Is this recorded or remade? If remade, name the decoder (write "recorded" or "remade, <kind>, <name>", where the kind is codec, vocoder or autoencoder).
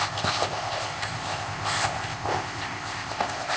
remade, codec, ZipCodec